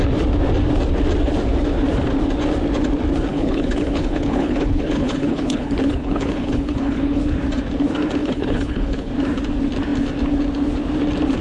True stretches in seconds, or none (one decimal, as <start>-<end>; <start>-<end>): 0.0-3.3; 7.2-8.2; 9.1-11.4